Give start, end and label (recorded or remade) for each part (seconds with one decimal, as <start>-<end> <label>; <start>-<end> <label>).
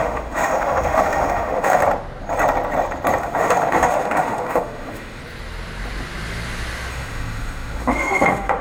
0.0-1.8 remade; 1.8-3.2 recorded; 3.2-5.2 remade; 5.2-6.9 recorded; 6.9-8.6 remade